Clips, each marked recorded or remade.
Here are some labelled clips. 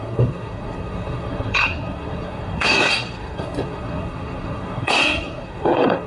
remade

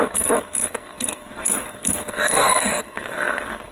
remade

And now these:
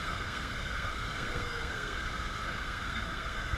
remade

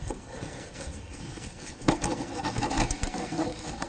remade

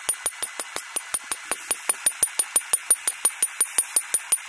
recorded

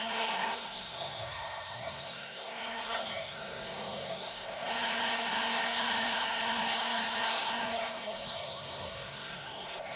remade